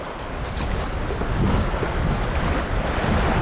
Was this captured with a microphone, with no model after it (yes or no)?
yes